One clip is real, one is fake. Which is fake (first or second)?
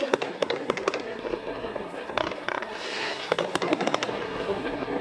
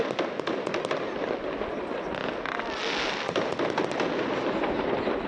first